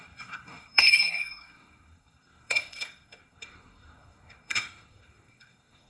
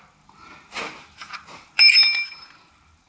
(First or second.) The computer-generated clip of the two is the first